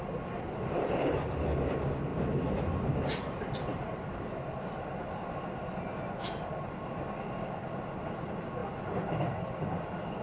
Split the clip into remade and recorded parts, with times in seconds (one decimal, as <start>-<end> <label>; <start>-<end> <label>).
0.0-10.2 recorded

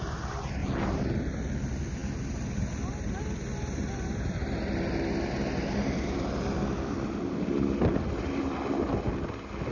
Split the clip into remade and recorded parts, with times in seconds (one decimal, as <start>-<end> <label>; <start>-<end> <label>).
0.0-0.6 recorded; 0.6-1.3 remade; 1.3-9.7 recorded

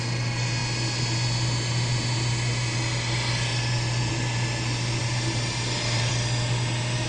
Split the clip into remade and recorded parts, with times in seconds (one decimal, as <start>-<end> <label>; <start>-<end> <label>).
0.0-5.0 recorded; 5.0-6.1 remade; 6.1-7.1 recorded

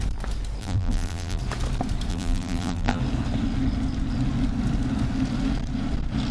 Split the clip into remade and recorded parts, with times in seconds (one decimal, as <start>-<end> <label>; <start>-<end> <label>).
0.0-0.6 recorded; 0.6-1.4 remade; 1.4-2.1 recorded; 2.1-3.0 remade; 3.0-6.3 recorded

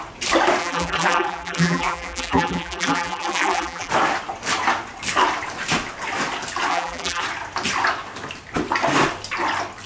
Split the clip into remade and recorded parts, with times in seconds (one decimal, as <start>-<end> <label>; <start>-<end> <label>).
0.0-0.6 recorded; 0.6-3.9 remade; 3.9-6.7 recorded; 6.7-7.2 remade; 7.2-9.9 recorded

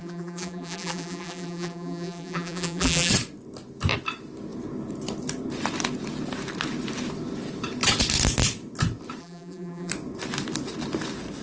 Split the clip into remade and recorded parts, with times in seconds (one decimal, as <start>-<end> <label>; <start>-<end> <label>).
0.0-3.1 remade; 3.1-9.2 recorded; 9.2-9.9 remade; 9.9-11.4 recorded

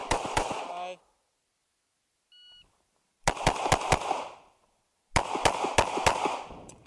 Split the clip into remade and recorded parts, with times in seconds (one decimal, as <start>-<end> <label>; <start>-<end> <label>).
0.0-0.6 remade; 0.6-6.9 recorded

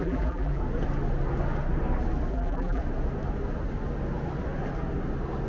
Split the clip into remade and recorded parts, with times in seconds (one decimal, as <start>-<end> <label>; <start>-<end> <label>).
0.0-0.6 remade; 0.6-2.3 recorded; 2.3-2.8 remade; 2.8-5.5 recorded